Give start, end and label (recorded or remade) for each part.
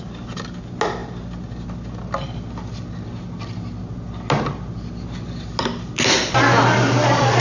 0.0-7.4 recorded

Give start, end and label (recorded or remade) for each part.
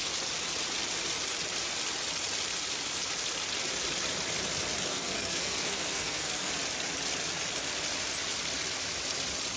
0.0-4.9 recorded; 4.9-6.5 remade; 6.5-9.6 recorded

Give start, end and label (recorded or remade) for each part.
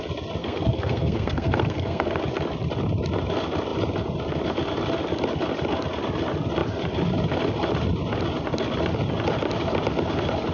0.0-0.4 recorded; 0.4-2.2 remade; 2.2-10.5 recorded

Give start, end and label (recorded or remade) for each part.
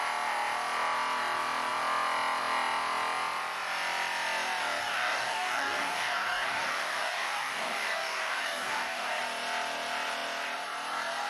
0.0-4.8 recorded; 4.8-9.2 remade; 9.2-11.3 recorded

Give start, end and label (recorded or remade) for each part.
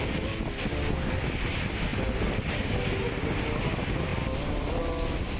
0.0-4.1 recorded; 4.1-4.8 remade; 4.8-5.4 recorded